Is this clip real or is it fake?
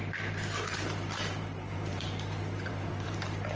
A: fake